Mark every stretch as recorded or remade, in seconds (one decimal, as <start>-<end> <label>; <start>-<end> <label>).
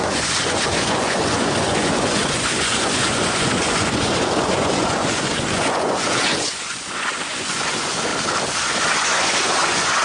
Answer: 0.0-8.1 remade; 8.1-8.6 recorded; 8.6-10.0 remade